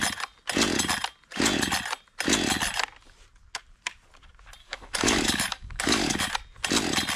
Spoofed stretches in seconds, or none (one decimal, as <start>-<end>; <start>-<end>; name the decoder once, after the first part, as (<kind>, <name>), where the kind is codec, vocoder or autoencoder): 4.6-6.3 (codec, DAC)